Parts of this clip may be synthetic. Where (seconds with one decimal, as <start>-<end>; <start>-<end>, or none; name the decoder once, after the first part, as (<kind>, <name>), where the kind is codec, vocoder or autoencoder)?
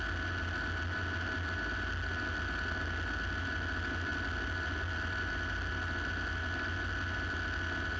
none